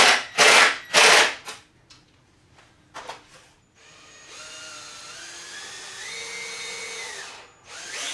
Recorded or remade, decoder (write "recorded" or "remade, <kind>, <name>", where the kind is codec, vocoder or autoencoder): recorded